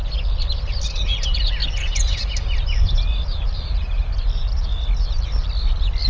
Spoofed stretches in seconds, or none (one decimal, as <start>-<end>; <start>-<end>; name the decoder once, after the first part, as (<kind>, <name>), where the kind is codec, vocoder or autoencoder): none